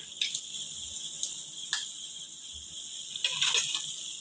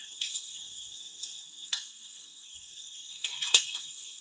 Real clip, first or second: first